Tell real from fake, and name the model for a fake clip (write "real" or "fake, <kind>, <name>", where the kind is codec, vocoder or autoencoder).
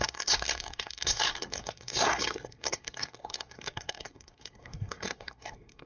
fake, codec, SNAC